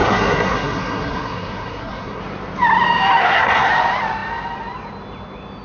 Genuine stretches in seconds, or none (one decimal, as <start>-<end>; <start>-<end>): 2.2-3.2; 3.7-5.6